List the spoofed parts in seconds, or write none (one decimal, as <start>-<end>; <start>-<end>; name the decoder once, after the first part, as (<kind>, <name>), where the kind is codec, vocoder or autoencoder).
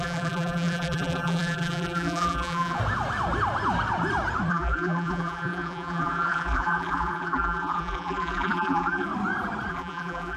0.0-2.8 (vocoder, BigVGAN v2); 4.5-9.1; 9.7-10.4